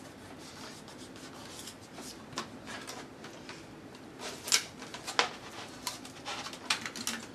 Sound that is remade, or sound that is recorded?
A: recorded